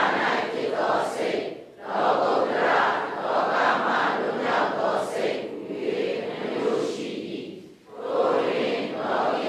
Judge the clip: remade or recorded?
recorded